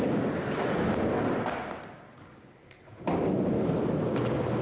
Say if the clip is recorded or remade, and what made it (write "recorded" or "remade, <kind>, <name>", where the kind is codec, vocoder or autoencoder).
recorded